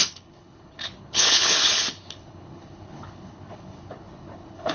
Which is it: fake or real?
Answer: fake